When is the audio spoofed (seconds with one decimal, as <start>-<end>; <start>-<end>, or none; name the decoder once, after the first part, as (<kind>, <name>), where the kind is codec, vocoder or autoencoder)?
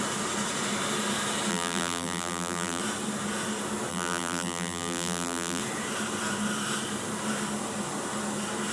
1.5-2.8 (vocoder, BigVGAN v2); 3.9-5.6